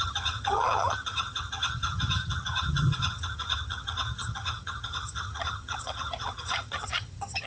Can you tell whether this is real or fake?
fake